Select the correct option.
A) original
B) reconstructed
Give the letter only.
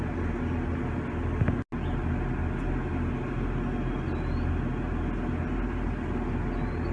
A